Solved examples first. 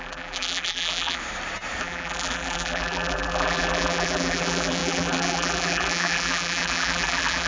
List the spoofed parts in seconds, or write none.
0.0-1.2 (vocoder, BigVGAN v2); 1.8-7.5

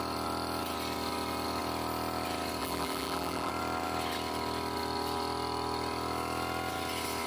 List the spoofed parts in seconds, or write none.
2.6-3.5 (vocoder, BigVGAN v2)

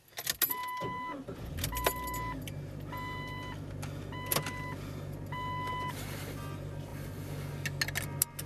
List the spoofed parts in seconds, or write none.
none